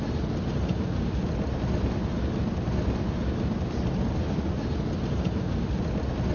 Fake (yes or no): no